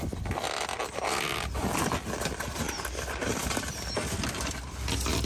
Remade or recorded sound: remade